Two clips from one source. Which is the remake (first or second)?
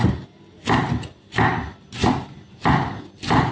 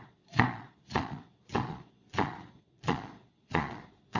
second